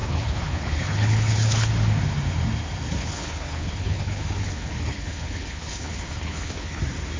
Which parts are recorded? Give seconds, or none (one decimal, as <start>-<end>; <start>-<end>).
1.7-3.0; 6.8-7.2